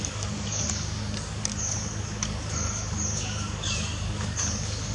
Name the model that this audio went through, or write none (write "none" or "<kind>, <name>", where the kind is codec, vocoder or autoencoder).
codec, DAC